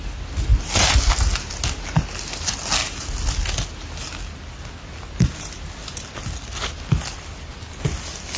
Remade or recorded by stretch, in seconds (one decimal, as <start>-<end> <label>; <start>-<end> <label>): 0.0-8.4 recorded